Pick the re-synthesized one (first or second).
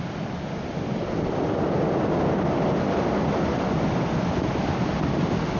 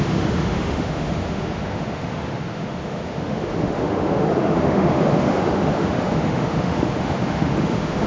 second